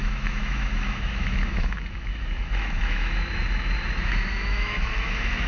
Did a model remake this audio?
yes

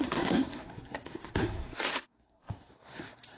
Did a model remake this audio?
yes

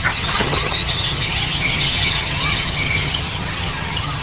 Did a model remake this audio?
yes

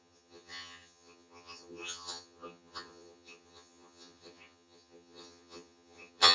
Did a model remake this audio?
yes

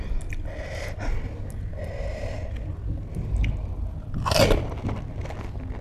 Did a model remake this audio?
no